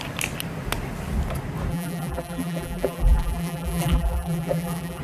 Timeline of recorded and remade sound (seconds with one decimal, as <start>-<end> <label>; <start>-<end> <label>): 0.0-1.7 recorded; 1.7-5.0 remade